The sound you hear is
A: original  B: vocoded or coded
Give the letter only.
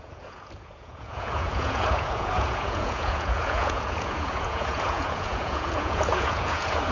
B